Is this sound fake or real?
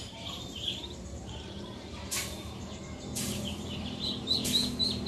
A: fake